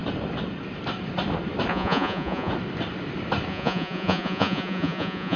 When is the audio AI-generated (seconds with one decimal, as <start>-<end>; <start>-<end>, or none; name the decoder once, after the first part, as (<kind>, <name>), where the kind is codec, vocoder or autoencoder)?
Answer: 1.7-2.5 (vocoder, Vocos); 3.5-5.4